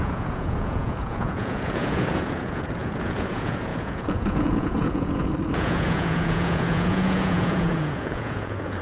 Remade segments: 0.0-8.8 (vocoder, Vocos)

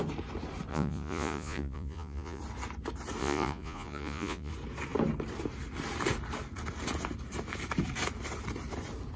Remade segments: 0.7-2.4 (vocoder, Vocos); 3.2-4.5

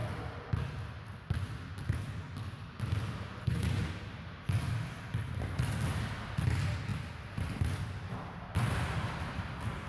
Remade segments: 3.3-3.8 (vocoder, Vocos)